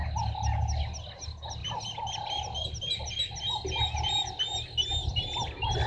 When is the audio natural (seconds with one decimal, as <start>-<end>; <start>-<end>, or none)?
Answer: 0.0-5.9